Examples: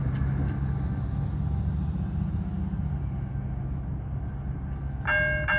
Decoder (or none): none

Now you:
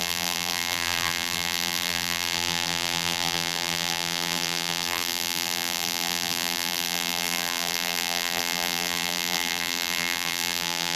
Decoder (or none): vocoder, BigVGAN v2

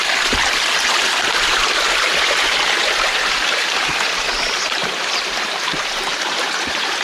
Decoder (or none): vocoder, BigVGAN v2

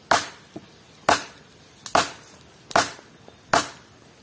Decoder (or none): none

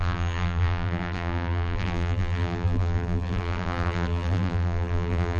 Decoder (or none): vocoder, BigVGAN v2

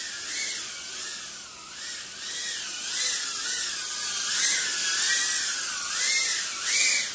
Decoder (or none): none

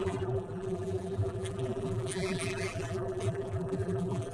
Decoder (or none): vocoder, BigVGAN v2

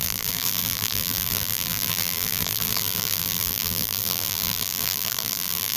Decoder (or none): vocoder, BigVGAN v2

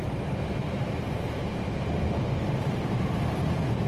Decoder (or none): vocoder, BigVGAN v2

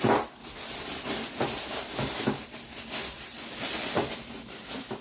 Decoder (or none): vocoder, BigVGAN v2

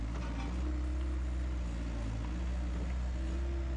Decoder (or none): none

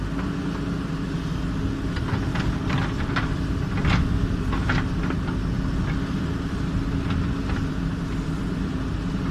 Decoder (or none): none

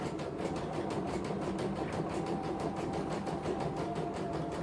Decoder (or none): vocoder, BigVGAN v2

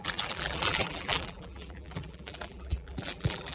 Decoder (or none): vocoder, BigVGAN v2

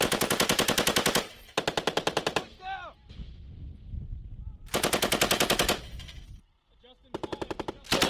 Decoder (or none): none